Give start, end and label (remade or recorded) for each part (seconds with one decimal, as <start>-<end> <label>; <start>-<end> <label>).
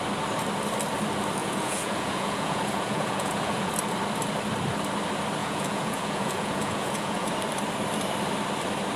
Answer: 0.0-1.4 recorded; 1.4-3.7 remade; 3.7-5.4 recorded; 5.4-7.3 remade; 7.3-9.0 recorded